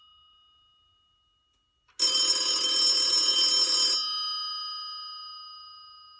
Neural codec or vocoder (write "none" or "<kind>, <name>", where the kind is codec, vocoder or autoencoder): none